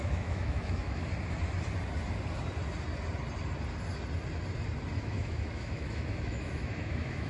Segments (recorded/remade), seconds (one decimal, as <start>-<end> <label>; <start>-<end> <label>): 0.0-1.1 remade; 1.1-5.0 recorded; 5.0-7.3 remade